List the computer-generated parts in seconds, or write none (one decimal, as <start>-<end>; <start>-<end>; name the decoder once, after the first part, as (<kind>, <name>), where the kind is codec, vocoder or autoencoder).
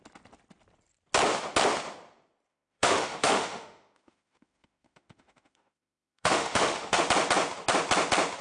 2.5-7.0 (autoencoder, DAC-VAE)